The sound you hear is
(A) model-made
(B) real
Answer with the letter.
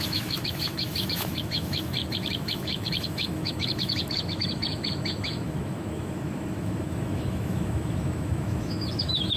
A